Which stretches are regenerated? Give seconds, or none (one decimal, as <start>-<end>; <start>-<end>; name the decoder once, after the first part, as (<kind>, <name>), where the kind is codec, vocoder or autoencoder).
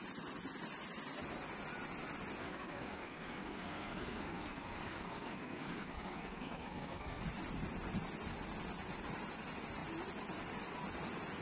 2.4-7.2 (codec, SNAC)